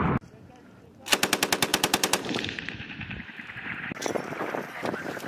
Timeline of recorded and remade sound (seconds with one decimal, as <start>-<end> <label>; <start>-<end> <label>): 0.0-1.7 recorded; 1.7-3.9 remade; 3.9-5.3 recorded